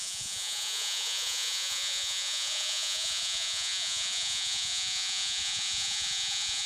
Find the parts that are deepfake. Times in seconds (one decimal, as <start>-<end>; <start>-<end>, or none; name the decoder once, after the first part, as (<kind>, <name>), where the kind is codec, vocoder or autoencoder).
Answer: 0.0-6.7 (vocoder, Vocos)